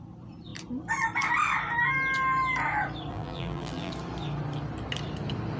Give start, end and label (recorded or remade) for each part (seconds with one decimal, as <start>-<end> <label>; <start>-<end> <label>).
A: 0.0-3.1 recorded; 3.1-3.9 remade; 3.9-5.6 recorded